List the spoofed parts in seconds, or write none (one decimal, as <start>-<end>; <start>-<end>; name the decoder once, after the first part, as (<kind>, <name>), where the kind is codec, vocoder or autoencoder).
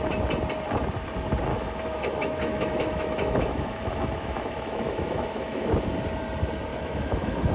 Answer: 1.5-5.7 (autoencoder, DAC-VAE); 6.7-7.5